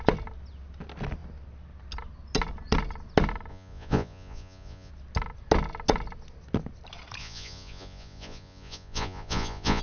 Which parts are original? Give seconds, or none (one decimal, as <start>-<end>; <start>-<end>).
0.0-3.5; 4.9-7.2